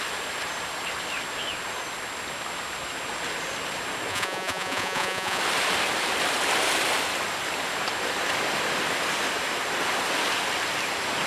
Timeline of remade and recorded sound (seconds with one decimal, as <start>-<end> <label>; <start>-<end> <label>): 0.0-4.1 recorded; 4.1-5.4 remade; 5.4-11.3 recorded